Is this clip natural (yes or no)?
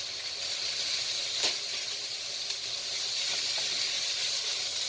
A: yes